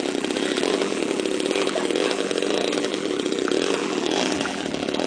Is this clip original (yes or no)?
no